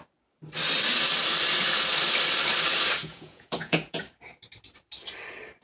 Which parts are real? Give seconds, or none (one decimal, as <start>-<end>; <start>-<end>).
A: 0.0-3.0; 4.0-5.6